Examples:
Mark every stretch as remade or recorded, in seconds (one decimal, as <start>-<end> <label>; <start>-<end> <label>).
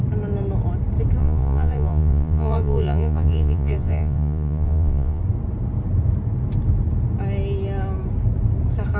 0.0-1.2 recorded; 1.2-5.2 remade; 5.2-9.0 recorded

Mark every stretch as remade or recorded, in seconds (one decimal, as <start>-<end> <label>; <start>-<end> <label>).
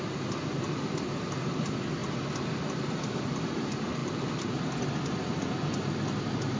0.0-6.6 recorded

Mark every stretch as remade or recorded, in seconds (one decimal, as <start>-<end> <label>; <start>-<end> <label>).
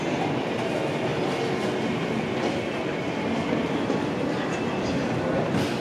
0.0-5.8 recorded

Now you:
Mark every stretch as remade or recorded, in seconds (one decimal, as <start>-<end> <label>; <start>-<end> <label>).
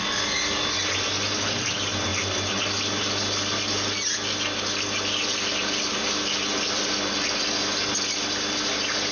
0.0-9.1 recorded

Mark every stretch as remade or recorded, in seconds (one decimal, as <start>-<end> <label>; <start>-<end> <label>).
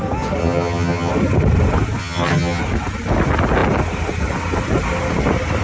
0.0-0.4 recorded; 0.4-1.1 remade; 1.1-2.0 recorded; 2.0-2.6 remade; 2.6-5.6 recorded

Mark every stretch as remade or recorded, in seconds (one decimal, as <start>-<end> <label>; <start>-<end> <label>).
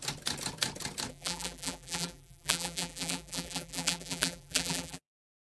0.0-1.1 recorded; 1.1-5.4 remade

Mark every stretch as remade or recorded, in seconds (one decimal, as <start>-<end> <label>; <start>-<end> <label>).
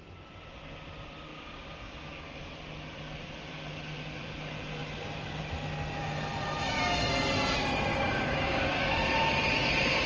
0.0-1.3 recorded; 1.3-2.4 remade; 2.4-7.9 recorded; 7.9-9.0 remade; 9.0-10.1 recorded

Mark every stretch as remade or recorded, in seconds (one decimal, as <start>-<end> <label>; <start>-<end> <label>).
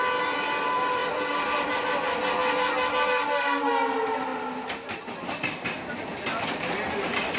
0.0-1.0 recorded; 1.0-1.7 remade; 1.7-4.3 recorded; 4.3-5.9 remade; 5.9-7.4 recorded